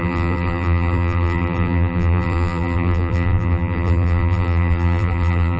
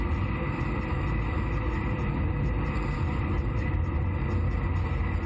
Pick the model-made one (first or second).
first